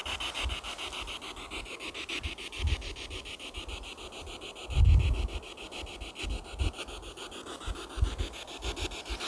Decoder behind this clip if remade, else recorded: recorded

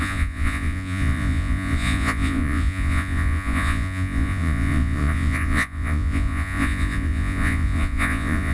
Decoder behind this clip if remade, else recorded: remade, vocoder, Vocos